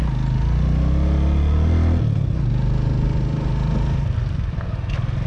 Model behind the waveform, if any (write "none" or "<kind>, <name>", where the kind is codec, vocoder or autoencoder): none